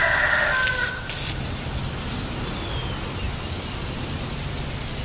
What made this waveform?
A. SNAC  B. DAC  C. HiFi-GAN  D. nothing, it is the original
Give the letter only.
D